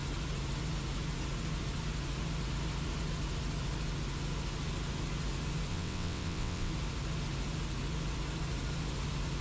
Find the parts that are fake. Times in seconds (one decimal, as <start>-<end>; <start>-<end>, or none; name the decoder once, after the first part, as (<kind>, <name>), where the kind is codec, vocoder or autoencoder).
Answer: 5.7-6.7 (vocoder, WaveNeXt)